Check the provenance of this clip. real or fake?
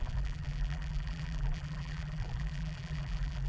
fake